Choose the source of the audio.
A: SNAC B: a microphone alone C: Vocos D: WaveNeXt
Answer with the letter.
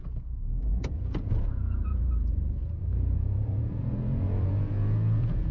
C